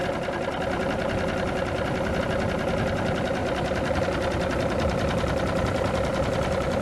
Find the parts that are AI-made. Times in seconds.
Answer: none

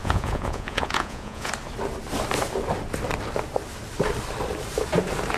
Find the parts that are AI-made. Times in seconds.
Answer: 0.0-1.5 (vocoder, Vocos)

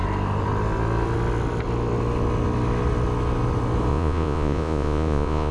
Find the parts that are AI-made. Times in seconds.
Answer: 3.9-5.5 (vocoder, Vocos)

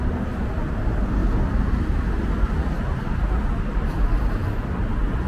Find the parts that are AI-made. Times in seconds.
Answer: none